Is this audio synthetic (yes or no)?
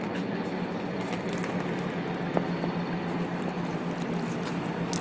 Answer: no